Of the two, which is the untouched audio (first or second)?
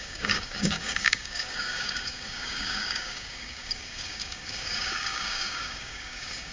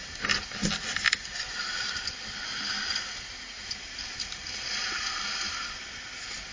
second